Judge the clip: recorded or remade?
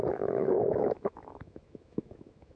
remade